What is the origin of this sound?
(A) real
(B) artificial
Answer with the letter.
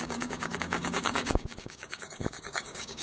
B